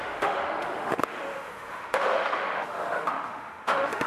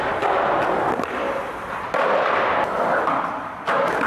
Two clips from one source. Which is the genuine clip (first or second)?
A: second